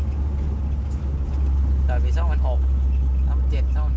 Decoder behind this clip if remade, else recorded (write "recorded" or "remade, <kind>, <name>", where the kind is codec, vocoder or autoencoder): recorded